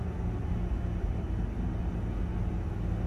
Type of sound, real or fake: real